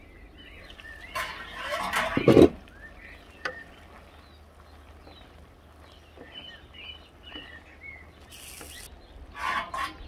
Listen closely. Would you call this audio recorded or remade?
recorded